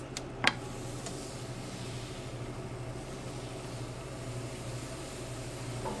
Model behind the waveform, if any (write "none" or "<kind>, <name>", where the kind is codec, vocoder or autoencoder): none